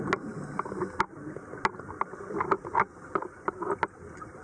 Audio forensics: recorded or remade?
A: recorded